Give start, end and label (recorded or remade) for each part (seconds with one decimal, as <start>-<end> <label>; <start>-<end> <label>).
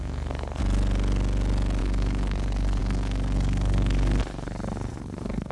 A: 0.0-0.6 remade; 0.6-1.8 recorded; 1.8-5.5 remade